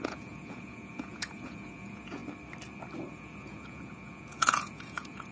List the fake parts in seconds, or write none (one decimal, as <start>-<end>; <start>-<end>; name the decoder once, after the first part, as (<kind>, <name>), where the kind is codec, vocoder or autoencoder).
0.0-2.2 (vocoder, Vocos); 3.1-5.3